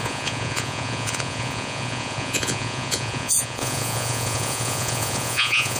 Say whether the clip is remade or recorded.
remade